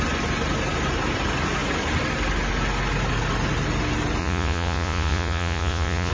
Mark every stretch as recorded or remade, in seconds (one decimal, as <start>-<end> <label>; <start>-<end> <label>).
0.0-4.2 recorded; 4.2-6.1 remade

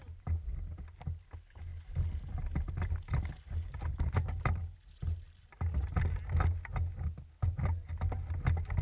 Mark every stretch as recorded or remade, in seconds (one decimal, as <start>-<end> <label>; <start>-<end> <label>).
0.0-8.8 recorded

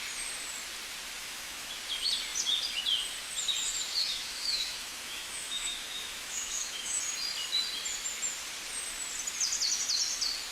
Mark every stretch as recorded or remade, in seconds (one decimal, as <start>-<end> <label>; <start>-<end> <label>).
0.0-1.2 recorded; 1.2-1.7 remade; 1.7-4.0 recorded; 4.0-7.0 remade; 7.0-10.5 recorded